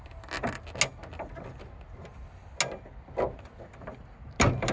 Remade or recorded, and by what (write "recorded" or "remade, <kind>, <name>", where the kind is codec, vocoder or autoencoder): recorded